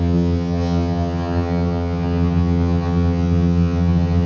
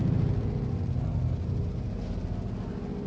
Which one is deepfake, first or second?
first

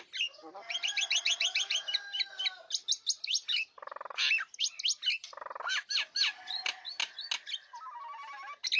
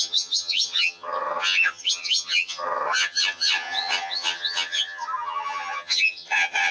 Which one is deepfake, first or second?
second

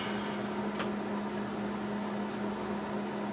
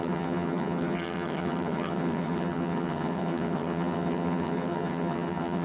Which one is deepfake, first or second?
second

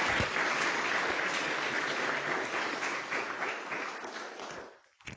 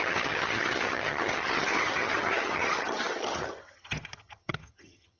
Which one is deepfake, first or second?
second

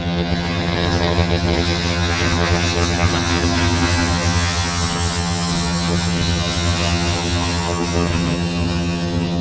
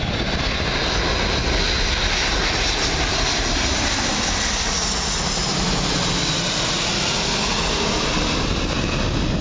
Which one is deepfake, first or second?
first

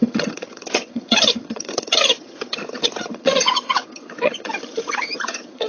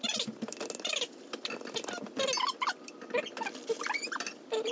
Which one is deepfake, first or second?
first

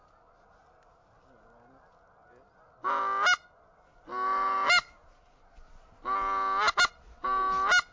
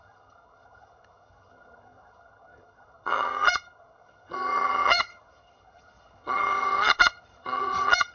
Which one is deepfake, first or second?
second